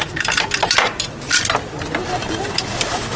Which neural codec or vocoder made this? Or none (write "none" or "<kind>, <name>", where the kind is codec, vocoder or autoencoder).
none